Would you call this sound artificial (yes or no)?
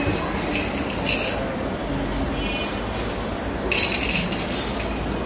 no